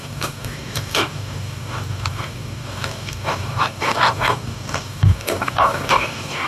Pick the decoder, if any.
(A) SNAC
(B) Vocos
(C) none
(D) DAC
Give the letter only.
D